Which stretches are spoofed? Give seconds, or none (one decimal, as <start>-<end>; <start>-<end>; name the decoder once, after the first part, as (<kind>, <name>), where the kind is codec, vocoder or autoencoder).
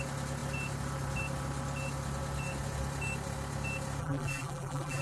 4.0-5.0 (vocoder, BigVGAN v2)